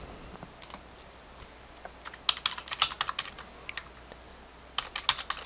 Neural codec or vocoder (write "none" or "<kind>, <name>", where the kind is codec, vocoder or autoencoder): none